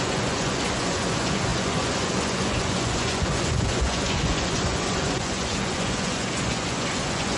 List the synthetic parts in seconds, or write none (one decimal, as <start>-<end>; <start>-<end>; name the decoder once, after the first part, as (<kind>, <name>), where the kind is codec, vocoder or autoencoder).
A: 0.0-7.4 (vocoder, Vocos)